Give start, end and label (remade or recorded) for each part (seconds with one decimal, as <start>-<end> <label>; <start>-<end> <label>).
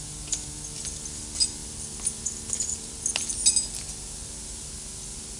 0.0-5.4 recorded